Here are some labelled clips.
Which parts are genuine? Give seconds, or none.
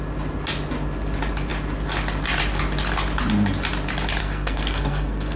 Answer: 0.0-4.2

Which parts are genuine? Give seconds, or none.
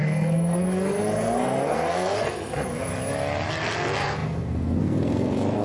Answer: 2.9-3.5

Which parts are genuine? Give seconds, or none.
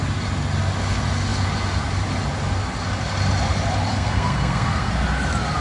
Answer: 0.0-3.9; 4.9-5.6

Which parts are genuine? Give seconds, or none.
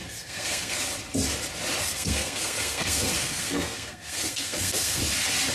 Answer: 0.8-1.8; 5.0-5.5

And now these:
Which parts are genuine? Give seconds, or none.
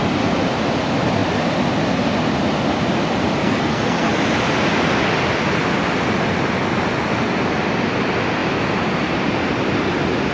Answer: 0.0-3.4; 4.1-10.3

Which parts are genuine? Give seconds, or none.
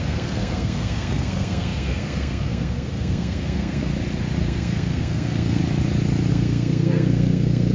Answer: 3.9-4.4; 5.6-6.3